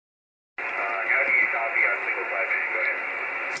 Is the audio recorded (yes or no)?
yes